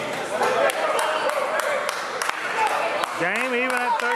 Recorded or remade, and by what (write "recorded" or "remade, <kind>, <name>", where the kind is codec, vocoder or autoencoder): recorded